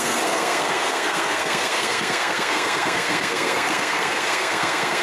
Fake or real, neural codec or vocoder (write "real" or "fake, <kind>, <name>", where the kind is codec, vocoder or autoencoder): fake, codec, SNAC